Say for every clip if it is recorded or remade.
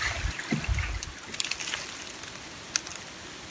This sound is recorded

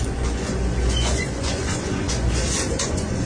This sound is remade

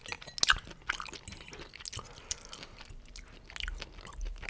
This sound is recorded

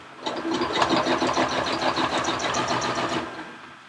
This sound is recorded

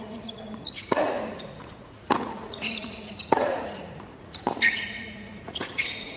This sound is remade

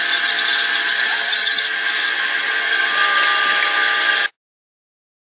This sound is recorded